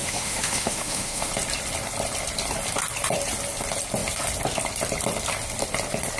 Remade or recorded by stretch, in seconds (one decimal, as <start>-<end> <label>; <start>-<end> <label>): 0.0-1.3 remade; 1.3-6.2 recorded